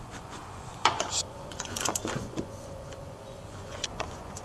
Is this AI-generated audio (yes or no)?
yes